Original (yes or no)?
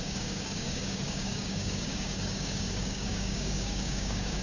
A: no